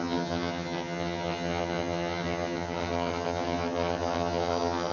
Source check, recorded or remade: remade